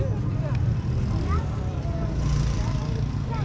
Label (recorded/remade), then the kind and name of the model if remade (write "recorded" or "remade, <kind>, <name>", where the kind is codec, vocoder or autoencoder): recorded